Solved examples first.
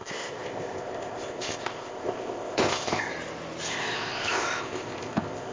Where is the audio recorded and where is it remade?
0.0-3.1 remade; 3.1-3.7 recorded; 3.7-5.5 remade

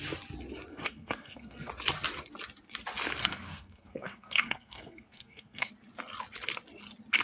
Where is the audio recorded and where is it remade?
0.0-0.7 recorded; 0.7-1.7 remade; 1.7-3.2 recorded; 3.2-5.7 remade; 5.7-7.2 recorded

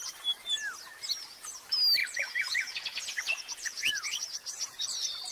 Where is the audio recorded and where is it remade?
0.0-2.0 recorded; 2.0-4.8 remade; 4.8-5.3 recorded

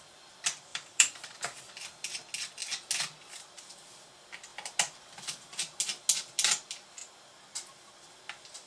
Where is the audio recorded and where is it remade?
0.0-0.7 recorded; 0.7-1.7 remade; 1.7-8.7 recorded